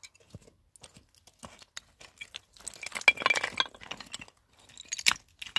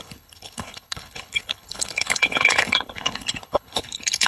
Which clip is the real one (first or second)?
first